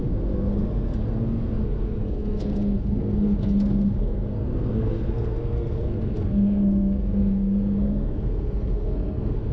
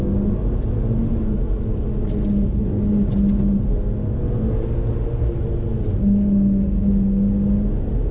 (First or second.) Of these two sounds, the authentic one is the second